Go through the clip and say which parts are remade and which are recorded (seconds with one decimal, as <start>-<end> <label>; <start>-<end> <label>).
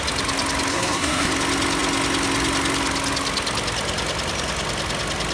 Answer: 0.0-0.7 recorded; 0.7-1.3 remade; 1.3-5.3 recorded